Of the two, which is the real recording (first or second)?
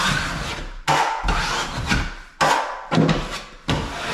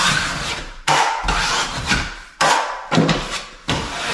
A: first